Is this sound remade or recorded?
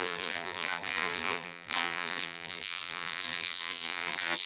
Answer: remade